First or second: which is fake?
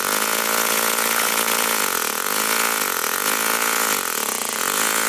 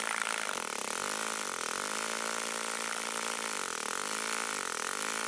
first